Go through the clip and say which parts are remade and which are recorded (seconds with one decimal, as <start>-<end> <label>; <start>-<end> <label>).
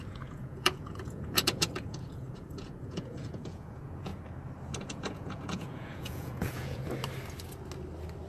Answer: 0.0-4.1 remade; 4.1-4.8 recorded; 4.8-6.8 remade; 6.8-8.3 recorded